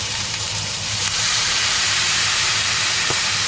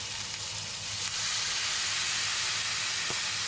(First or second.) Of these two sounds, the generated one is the first